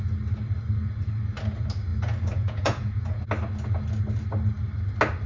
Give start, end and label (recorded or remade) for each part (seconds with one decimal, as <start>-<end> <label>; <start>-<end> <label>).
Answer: 0.0-1.9 recorded; 1.9-3.2 remade; 3.2-5.3 recorded